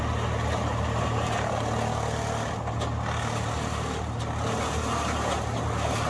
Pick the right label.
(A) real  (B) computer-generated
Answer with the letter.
A